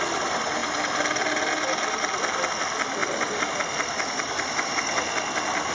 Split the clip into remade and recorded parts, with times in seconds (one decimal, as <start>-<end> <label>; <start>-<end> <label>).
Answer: 0.0-5.7 recorded